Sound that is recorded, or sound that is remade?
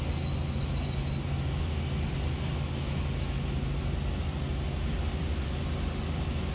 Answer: recorded